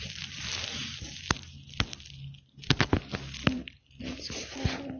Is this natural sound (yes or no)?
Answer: yes